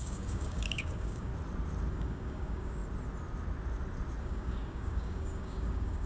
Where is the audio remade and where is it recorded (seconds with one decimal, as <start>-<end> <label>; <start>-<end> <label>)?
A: 0.0-1.3 remade; 1.3-1.9 recorded; 1.9-2.8 remade; 2.8-4.2 recorded; 4.2-6.1 remade